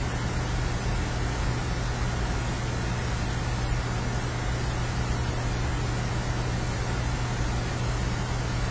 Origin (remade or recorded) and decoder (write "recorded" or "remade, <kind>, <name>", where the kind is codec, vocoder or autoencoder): recorded